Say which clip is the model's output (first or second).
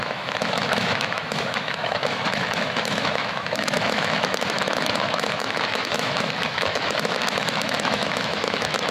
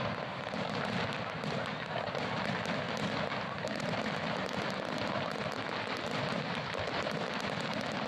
first